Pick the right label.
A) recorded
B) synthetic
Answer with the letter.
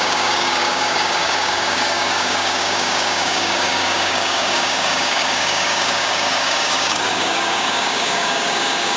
B